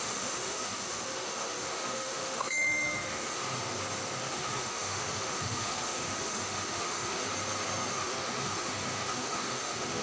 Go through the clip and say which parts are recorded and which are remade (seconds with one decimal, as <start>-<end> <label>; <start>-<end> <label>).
0.0-3.4 remade; 3.4-4.2 recorded; 4.2-7.3 remade; 7.3-7.9 recorded; 7.9-10.0 remade